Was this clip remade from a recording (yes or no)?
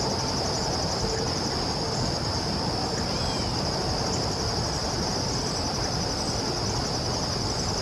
no